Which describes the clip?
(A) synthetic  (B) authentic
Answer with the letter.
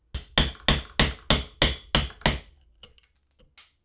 B